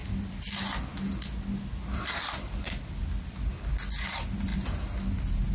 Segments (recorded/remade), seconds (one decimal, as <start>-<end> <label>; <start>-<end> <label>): 0.0-5.5 recorded